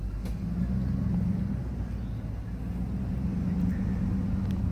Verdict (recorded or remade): recorded